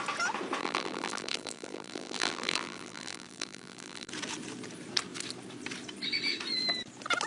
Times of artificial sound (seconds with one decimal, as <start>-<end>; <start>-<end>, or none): 0.6-4.1